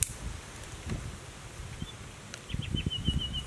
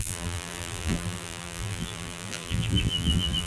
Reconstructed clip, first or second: second